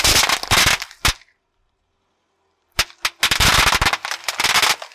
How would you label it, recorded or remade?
recorded